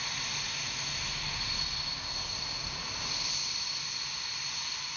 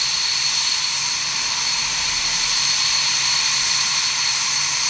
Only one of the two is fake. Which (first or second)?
second